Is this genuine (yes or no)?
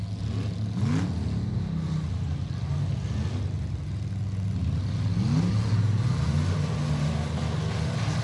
yes